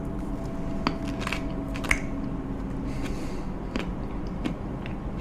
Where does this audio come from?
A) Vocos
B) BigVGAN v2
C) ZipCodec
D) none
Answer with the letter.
D